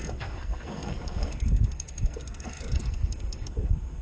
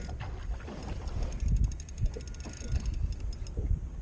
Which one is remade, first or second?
first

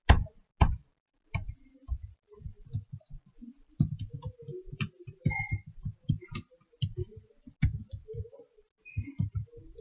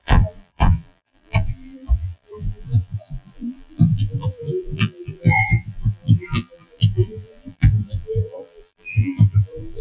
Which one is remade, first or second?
second